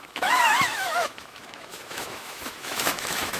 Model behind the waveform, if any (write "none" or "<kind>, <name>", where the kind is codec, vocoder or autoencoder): autoencoder, DAC-VAE